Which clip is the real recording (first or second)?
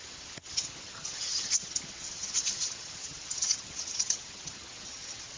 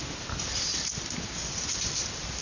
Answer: second